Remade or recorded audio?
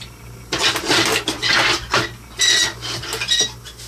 recorded